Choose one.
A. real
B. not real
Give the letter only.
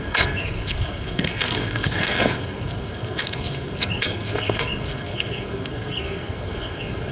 B